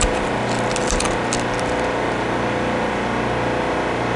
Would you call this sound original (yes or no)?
yes